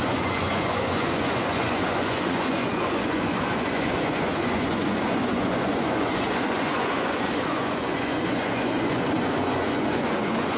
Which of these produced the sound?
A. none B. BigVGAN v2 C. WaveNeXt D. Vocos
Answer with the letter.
D